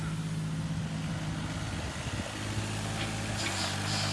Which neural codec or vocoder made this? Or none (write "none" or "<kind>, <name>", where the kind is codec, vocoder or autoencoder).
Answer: none